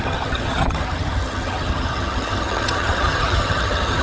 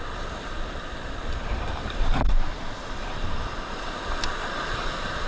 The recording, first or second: second